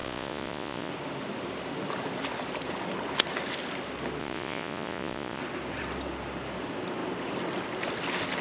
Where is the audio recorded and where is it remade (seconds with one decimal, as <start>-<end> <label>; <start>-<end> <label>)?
0.0-0.9 remade; 0.9-4.2 recorded; 4.2-5.4 remade; 5.4-8.4 recorded